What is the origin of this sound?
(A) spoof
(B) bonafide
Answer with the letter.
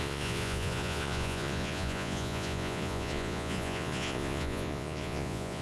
A